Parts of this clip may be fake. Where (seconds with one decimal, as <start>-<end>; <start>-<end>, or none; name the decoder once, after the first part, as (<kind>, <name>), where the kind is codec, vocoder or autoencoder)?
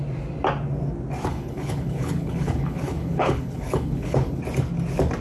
1.3-4.4 (codec, HILCodec)